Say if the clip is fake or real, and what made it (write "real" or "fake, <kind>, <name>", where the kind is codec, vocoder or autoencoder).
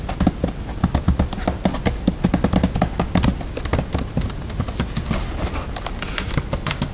real